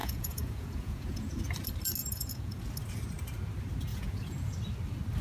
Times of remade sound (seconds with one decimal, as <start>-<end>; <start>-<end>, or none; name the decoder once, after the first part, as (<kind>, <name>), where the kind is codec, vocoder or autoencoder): 0.0-1.4 (vocoder, Vocos); 2.0-2.6; 3.9-4.5